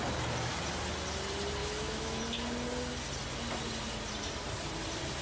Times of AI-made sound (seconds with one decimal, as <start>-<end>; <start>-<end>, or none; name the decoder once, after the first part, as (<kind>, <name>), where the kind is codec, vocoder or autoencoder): 1.6-2.2 (autoencoder, DAC-VAE)